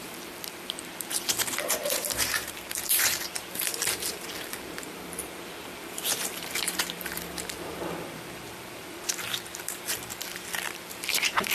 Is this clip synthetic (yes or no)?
yes